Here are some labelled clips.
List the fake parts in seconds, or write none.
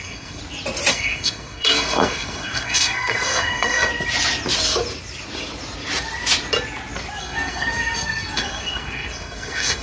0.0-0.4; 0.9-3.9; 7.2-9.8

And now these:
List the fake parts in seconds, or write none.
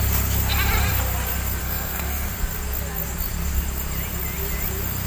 1.6-2.3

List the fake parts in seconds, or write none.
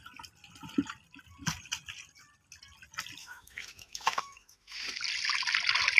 3.2-5.0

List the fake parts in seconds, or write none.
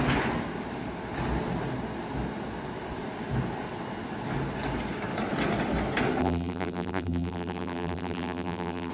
6.2-8.9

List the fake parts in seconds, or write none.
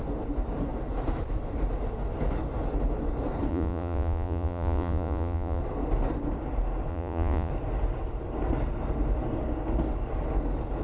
3.5-5.6; 6.9-7.5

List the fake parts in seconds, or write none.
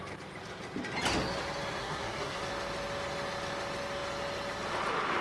1.8-2.4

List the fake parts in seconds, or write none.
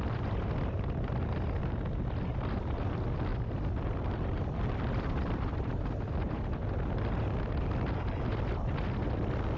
3.3-6.7